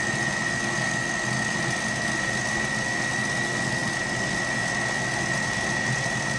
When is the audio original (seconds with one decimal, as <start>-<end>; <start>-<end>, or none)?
0.0-6.4